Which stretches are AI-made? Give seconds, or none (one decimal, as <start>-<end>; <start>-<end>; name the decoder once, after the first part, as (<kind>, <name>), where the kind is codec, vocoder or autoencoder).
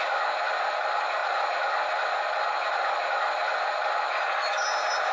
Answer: none